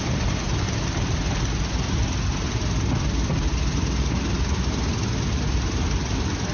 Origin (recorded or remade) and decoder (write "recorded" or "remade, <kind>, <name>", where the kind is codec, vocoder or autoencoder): recorded